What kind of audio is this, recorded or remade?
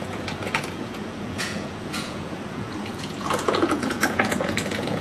remade